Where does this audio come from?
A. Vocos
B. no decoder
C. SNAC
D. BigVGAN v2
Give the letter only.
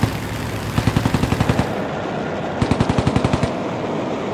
B